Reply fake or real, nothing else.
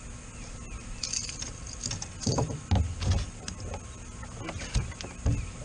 real